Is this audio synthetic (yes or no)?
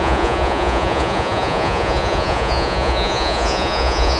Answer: yes